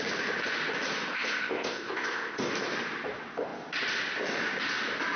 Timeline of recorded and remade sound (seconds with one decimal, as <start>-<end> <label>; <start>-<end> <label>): 0.0-1.1 recorded; 1.1-2.5 remade; 2.5-5.2 recorded